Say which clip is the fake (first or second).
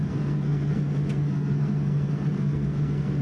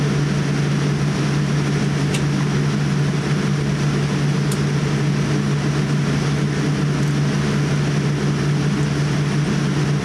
first